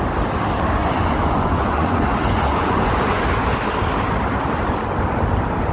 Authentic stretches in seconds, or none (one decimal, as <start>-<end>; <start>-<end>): 0.0-0.8; 3.2-5.7